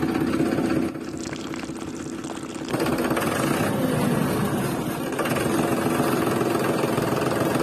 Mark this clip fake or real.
real